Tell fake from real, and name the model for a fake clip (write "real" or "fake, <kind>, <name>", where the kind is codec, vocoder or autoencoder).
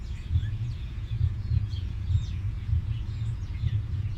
fake, vocoder, Vocos